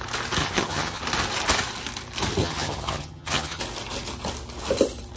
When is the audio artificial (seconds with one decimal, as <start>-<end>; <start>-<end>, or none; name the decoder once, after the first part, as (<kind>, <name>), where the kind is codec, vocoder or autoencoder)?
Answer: 0.4-1.0 (vocoder, HiFi-GAN); 2.4-3.6